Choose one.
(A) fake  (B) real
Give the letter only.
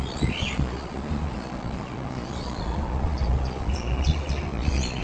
A